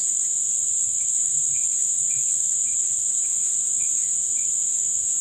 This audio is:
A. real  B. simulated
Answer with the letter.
B